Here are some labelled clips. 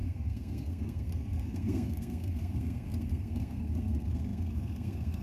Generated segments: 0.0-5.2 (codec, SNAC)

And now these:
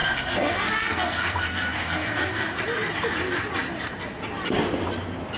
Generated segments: 0.0-2.6 (codec, SNAC)

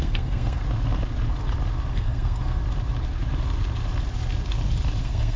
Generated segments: 0.0-0.6 (codec, SNAC); 1.9-2.6; 5.0-5.4

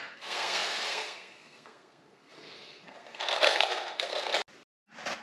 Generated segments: 0.0-4.3 (codec, SNAC)

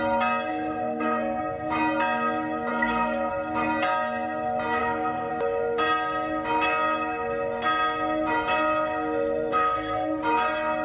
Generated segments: 0.5-1.4 (codec, SNAC); 2.7-3.3; 4.8-5.3; 9.5-10.2